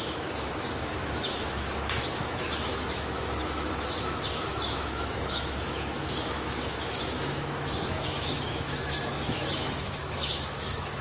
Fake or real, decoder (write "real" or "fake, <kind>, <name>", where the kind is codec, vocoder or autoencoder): fake, autoencoder, DAC-VAE